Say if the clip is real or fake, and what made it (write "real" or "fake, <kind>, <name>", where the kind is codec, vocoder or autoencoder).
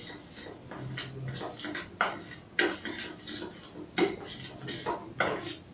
real